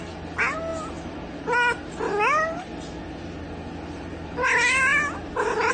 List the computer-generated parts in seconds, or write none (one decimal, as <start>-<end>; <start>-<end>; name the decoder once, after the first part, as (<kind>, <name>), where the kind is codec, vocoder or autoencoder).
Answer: none